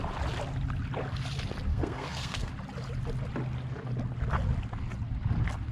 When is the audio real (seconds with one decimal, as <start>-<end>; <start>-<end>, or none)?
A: 0.0-1.7; 2.5-5.7